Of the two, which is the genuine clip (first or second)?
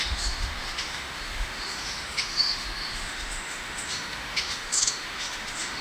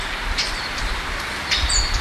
second